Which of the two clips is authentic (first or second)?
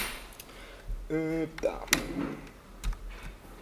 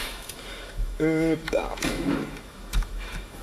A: first